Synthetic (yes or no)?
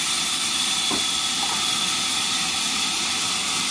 no